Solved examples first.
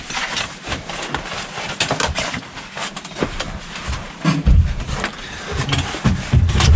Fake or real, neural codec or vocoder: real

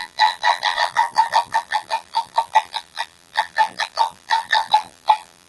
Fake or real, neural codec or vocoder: fake, vocoder, BigVGAN v2